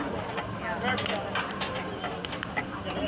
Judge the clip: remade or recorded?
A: recorded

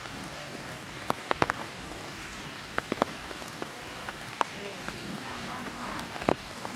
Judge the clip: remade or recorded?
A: remade